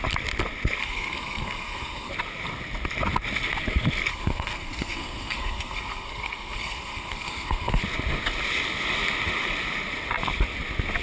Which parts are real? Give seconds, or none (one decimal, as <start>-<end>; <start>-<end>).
0.0-0.8; 2.1-4.1; 7.8-11.0